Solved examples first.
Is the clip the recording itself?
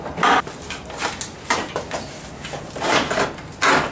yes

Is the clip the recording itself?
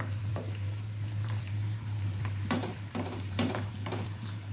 no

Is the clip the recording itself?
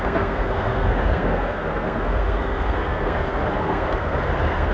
no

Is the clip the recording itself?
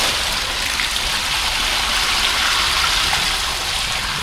yes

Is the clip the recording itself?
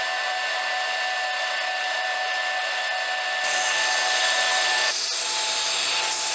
yes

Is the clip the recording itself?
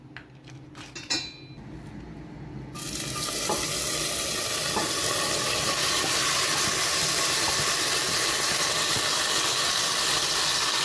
yes